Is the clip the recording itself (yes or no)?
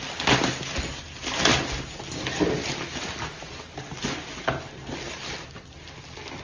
yes